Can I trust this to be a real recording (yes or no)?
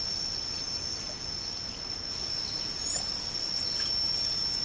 yes